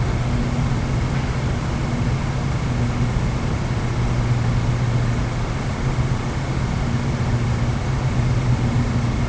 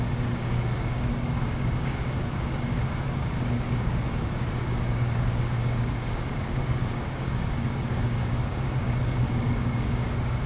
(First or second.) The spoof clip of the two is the second